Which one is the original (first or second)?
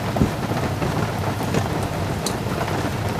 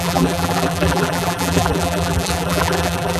first